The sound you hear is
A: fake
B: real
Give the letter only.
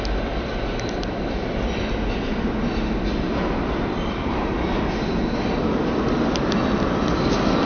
B